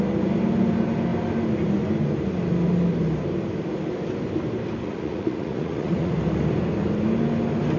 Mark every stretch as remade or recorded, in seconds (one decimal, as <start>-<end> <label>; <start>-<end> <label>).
0.0-4.8 recorded; 4.8-6.1 remade; 6.1-7.8 recorded